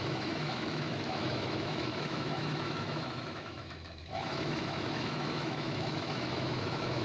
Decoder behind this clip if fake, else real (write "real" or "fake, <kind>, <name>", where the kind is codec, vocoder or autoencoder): fake, autoencoder, DAC-VAE